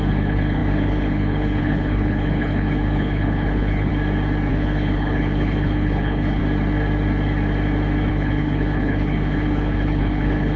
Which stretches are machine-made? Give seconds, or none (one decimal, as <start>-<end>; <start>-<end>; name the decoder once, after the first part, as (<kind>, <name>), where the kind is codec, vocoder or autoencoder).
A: 0.0-3.9 (codec, HILCodec); 4.5-6.4; 8.1-10.6